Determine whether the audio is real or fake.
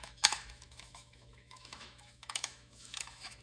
fake